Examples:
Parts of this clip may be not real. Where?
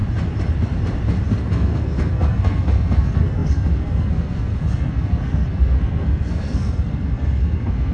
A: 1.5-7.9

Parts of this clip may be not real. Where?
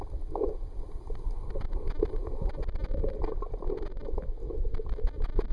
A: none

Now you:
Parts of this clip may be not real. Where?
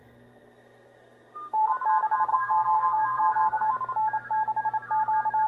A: 0.0-1.7; 2.3-3.7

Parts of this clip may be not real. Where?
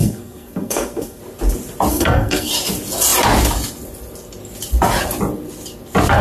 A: 0.0-1.2; 1.9-2.5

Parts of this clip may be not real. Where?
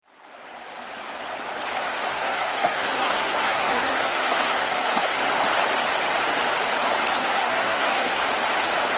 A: 2.1-5.2; 7.2-8.2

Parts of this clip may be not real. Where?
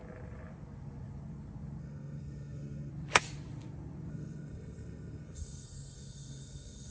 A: 1.8-2.9; 4.1-6.9